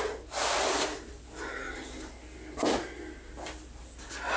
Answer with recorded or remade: recorded